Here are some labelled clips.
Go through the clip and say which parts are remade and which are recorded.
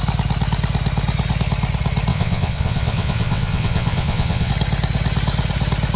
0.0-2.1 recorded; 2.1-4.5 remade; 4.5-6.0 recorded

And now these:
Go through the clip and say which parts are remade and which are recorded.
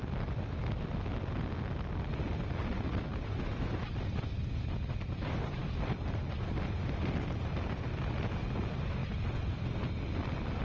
0.0-3.8 recorded; 3.8-4.4 remade; 4.4-9.0 recorded; 9.0-9.8 remade; 9.8-10.6 recorded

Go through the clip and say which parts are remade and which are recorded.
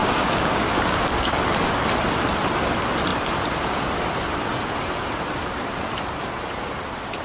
0.0-1.3 remade; 1.3-7.2 recorded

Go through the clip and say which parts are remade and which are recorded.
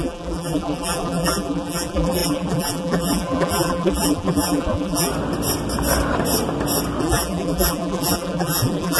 0.0-5.1 remade; 5.1-7.0 recorded; 7.0-9.0 remade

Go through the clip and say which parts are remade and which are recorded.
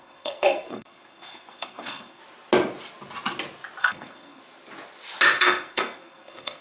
0.0-2.2 remade; 2.2-3.8 recorded; 3.8-4.4 remade; 4.4-5.4 recorded; 5.4-6.6 remade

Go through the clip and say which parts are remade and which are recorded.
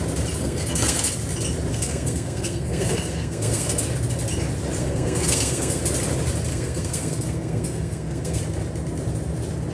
0.0-0.4 recorded; 0.4-1.1 remade; 1.1-1.7 recorded; 1.7-3.8 remade; 3.8-4.8 recorded; 4.8-5.8 remade; 5.8-6.5 recorded; 6.5-8.4 remade; 8.4-9.7 recorded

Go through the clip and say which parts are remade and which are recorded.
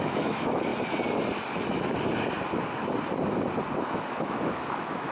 0.0-0.7 remade; 0.7-3.8 recorded; 3.8-5.1 remade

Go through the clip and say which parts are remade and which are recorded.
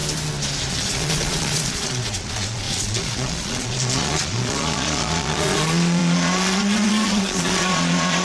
0.0-0.7 recorded; 0.7-8.2 remade